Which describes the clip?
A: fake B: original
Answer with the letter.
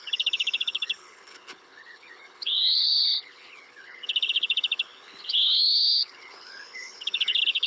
A